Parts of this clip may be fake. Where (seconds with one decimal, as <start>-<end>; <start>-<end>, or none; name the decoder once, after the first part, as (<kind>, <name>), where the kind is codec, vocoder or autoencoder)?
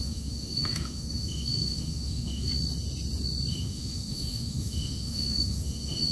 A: 0.0-2.5 (autoencoder, DAC-VAE); 3.5-6.1